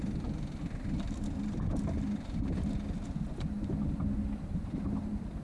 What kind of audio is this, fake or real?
real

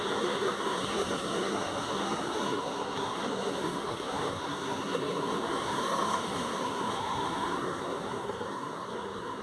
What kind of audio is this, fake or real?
fake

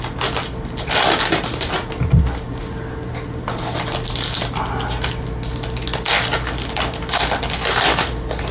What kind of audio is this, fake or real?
real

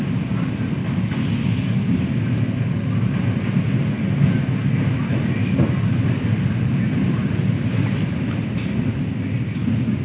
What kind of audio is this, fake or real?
real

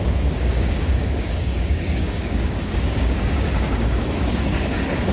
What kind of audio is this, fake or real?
fake